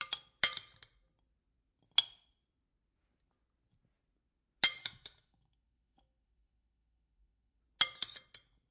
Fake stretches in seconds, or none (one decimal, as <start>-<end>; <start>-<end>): 4.8-7.6